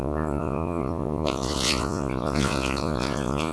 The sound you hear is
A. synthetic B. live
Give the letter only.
A